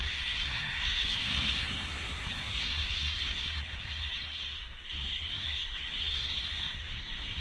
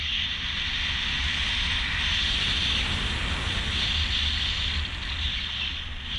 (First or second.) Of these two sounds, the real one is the second